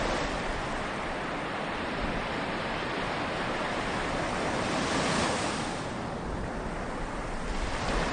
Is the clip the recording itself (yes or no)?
yes